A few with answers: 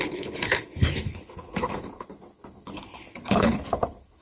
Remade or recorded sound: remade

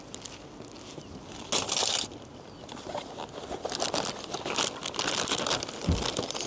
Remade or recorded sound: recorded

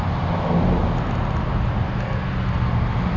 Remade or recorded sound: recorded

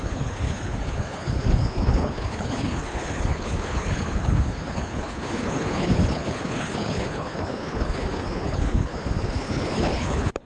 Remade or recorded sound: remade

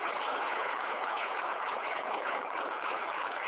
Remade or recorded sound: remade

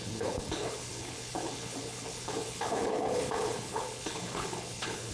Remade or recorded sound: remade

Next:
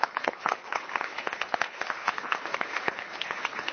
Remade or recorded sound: remade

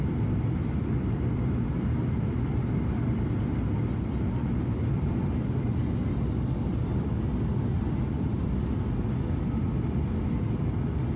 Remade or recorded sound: recorded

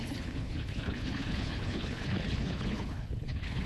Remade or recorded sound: remade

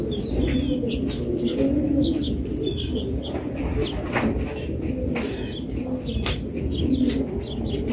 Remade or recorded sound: recorded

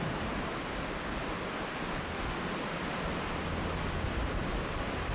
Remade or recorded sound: recorded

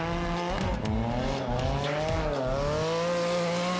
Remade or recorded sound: recorded